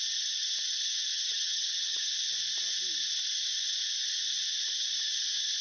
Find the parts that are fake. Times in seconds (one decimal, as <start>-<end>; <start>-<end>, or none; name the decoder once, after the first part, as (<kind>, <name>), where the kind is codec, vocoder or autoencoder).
1.1-2.1 (vocoder, HiFi-GAN)